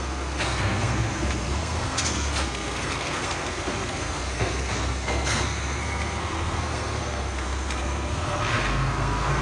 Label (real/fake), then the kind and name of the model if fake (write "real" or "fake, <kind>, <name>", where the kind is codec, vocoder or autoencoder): fake, codec, SNAC